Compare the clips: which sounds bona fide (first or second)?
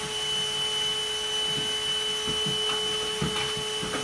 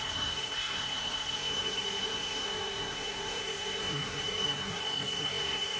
first